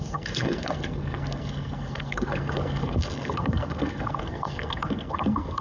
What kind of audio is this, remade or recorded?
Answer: remade